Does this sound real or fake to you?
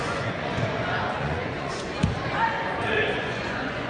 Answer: fake